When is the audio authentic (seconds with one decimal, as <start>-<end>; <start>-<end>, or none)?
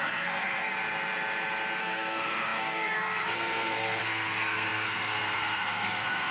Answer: 0.7-1.8